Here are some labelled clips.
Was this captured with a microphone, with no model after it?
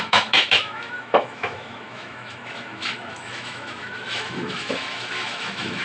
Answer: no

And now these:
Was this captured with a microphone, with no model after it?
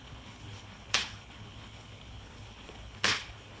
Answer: no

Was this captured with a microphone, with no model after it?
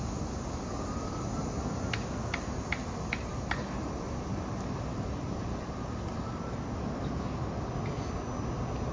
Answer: yes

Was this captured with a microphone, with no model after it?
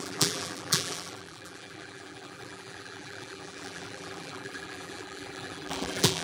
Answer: no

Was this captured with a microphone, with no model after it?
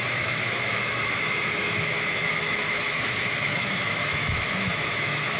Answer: no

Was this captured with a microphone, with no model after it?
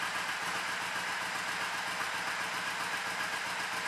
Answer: yes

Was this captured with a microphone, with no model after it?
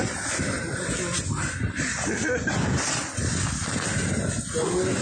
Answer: yes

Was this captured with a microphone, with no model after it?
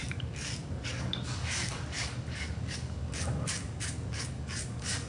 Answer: no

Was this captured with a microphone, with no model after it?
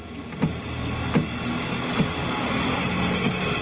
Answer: yes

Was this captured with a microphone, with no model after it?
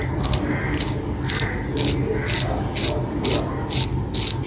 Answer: yes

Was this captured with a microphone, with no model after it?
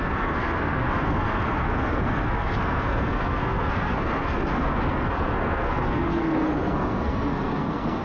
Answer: no